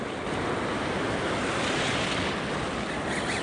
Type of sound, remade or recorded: recorded